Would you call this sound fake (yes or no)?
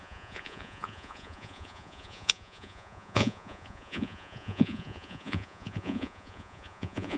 yes